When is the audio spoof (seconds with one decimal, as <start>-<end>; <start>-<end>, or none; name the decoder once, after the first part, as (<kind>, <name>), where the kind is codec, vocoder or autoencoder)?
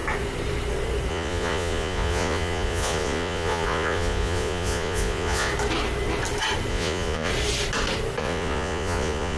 1.1-5.5 (vocoder, Vocos); 6.7-7.3; 8.2-9.4